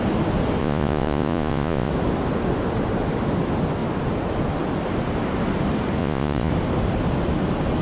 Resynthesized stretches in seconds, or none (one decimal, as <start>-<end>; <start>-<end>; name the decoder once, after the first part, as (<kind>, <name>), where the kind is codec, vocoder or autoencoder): 0.6-1.9 (vocoder, Vocos); 6.0-6.5